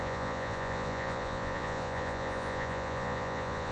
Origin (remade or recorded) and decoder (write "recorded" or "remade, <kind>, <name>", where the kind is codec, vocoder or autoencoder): remade, vocoder, Vocos